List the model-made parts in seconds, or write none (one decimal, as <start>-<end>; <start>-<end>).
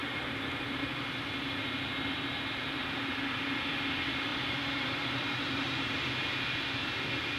0.0-1.3; 4.3-6.0